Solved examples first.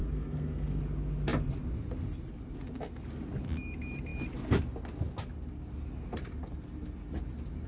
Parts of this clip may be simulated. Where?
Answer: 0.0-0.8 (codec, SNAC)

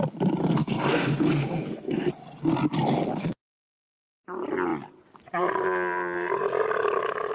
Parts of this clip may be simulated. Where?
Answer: 0.4-2.1 (codec, SNAC); 3.2-4.2

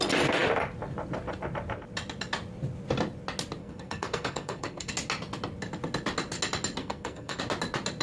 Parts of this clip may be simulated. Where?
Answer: 3.6-4.9 (codec, SNAC); 6.8-7.4

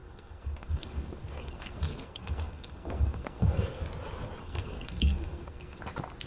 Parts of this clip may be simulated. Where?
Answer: 0.0-3.8 (codec, SNAC); 4.4-5.8

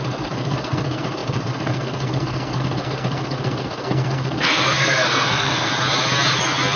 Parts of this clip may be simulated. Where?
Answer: 0.0-5.7 (codec, SNAC)

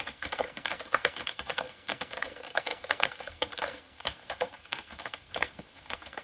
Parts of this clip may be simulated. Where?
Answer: 0.0-6.2 (codec, SNAC)

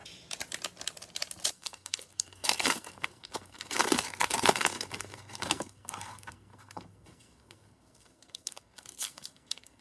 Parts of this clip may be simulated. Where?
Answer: 1.5-9.8 (codec, SNAC)

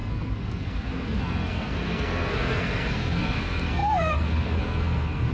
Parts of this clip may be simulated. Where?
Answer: 0.0-5.3 (codec, SNAC)